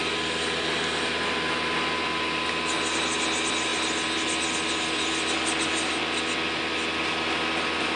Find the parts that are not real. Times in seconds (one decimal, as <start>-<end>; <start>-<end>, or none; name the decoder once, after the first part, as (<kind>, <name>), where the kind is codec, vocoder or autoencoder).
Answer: none